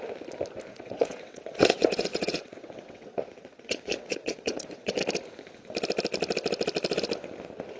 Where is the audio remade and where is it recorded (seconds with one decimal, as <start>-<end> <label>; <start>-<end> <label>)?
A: 0.0-0.7 recorded; 0.7-5.0 remade; 5.0-7.8 recorded